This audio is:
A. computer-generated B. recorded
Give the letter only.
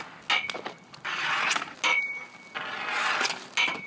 B